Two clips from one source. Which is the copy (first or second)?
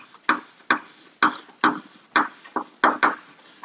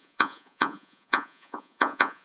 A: second